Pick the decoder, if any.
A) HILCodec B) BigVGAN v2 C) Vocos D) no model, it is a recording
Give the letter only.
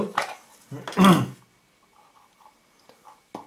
D